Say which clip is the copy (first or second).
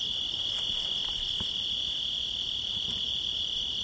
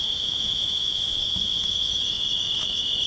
second